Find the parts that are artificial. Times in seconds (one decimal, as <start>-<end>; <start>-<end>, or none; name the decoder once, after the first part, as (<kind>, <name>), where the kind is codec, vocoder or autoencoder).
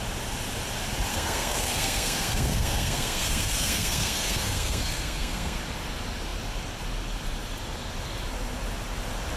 1.1-5.6 (codec, SNAC)